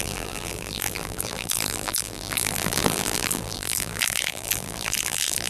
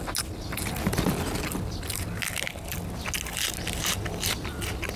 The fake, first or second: first